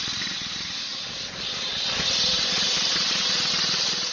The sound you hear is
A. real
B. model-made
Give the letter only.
A